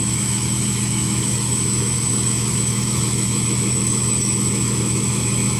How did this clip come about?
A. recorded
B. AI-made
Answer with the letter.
B